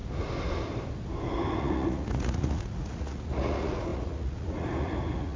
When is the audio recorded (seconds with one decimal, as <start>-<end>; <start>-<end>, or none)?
0.0-1.6